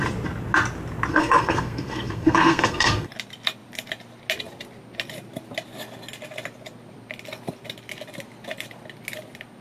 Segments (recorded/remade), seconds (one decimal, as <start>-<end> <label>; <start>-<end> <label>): 0.0-1.1 recorded; 1.1-3.1 remade; 3.1-9.6 recorded